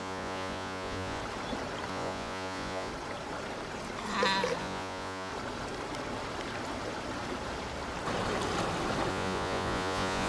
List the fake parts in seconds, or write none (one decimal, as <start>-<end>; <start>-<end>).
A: 0.0-1.2; 1.9-2.9; 4.6-5.3; 9.1-10.3